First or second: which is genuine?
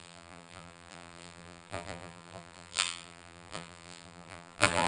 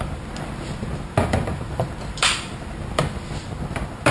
second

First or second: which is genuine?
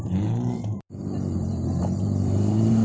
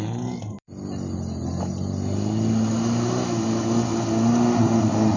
second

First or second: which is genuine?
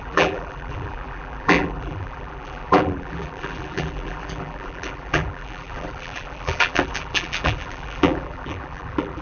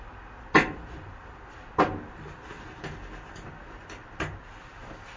second